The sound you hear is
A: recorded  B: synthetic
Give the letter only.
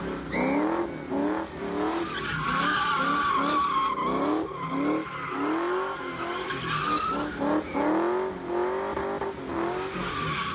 A